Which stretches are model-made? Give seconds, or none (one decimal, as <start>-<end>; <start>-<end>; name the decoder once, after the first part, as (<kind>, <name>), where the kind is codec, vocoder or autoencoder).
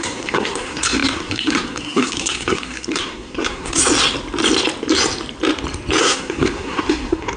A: 0.0-3.8 (codec, SNAC); 6.0-7.4